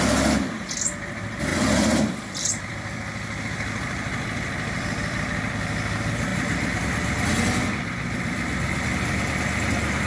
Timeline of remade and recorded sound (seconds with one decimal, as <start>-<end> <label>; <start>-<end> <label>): 0.0-1.5 recorded; 1.5-5.5 remade; 5.5-6.3 recorded; 6.3-6.8 remade; 6.8-10.1 recorded